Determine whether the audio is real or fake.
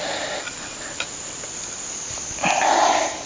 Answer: real